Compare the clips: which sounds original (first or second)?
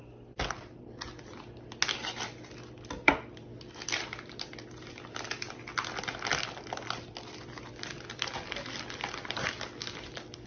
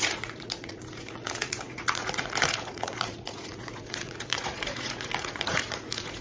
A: first